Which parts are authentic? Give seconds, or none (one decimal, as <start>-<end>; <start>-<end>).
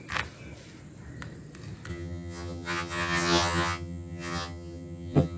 0.0-1.9